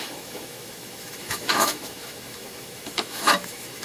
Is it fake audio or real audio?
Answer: fake